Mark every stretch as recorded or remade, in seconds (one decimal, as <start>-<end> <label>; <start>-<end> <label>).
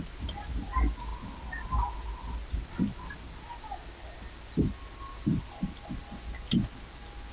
0.0-7.3 recorded